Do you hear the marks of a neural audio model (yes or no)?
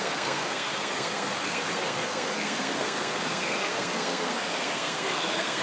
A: yes